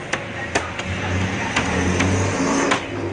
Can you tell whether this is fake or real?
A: real